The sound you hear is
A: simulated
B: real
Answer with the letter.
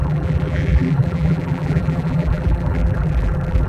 A